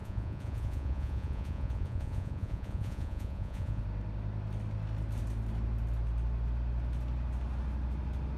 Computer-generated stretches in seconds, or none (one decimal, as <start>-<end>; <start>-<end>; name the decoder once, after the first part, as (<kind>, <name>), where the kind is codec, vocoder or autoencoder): 0.0-3.8 (vocoder, Vocos)